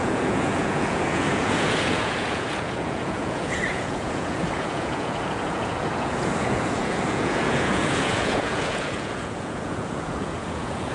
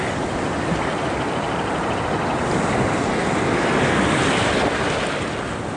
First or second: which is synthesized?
first